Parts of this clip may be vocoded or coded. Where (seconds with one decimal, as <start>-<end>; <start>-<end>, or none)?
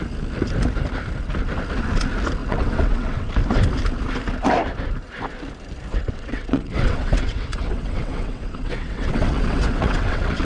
2.4-3.3; 5.9-10.4